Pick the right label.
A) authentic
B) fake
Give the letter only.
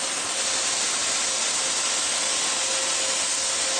A